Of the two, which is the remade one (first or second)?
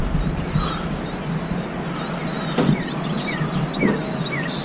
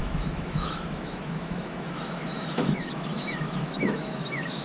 second